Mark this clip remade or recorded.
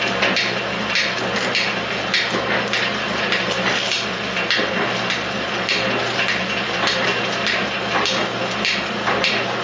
recorded